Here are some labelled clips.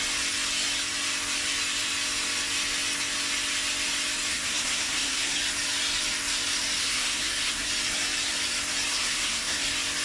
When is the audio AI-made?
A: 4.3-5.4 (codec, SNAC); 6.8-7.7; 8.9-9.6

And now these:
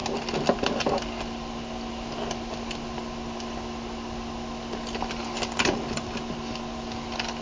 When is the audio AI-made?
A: none

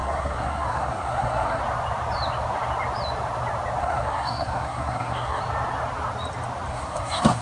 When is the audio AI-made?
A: 0.0-1.6 (codec, SNAC); 3.8-5.4; 6.7-7.4

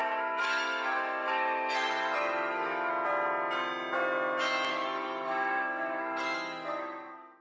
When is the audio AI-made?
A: 0.0-2.9 (codec, SNAC); 4.7-7.4

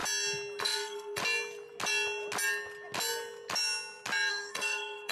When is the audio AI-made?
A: 0.6-1.2 (codec, SNAC); 4.3-5.1

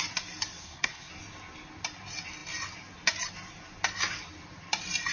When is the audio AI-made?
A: 0.6-1.1 (codec, SNAC)

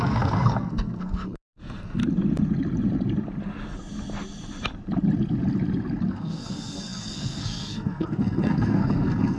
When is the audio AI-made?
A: 0.0-2.0 (codec, SNAC); 6.1-9.4